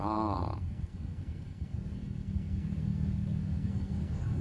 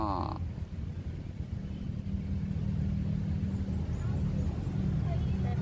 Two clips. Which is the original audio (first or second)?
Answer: second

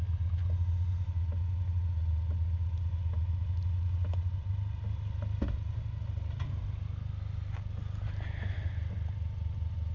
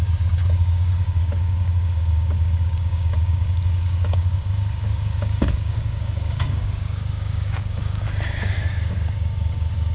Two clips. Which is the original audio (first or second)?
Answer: first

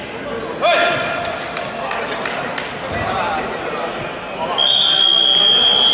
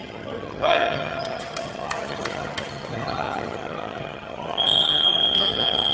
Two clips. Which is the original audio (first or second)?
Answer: first